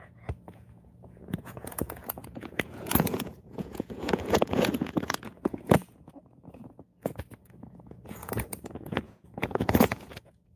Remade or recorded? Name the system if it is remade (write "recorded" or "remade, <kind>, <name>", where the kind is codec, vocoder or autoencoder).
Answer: remade, vocoder, Vocos